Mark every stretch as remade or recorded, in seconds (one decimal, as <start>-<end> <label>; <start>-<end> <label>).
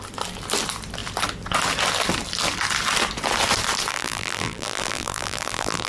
0.0-3.9 recorded; 3.9-5.9 remade